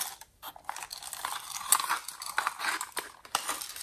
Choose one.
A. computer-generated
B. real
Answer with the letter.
B